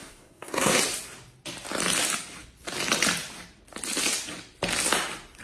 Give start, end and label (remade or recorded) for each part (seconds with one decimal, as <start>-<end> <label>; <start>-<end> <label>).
0.0-0.8 remade; 0.8-5.4 recorded